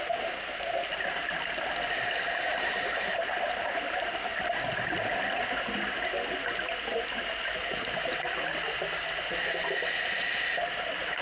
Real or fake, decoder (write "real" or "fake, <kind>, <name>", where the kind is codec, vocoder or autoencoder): real